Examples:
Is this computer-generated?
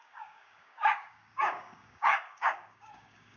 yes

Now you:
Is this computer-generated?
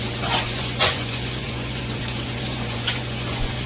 yes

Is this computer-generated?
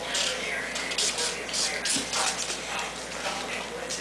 no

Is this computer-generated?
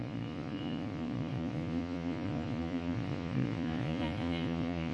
yes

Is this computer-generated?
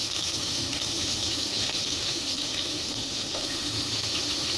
yes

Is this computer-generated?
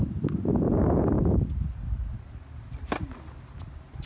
no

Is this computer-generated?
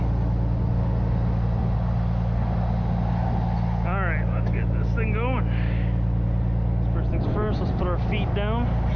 no